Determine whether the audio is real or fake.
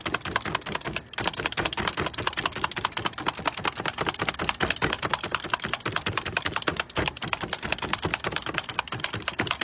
real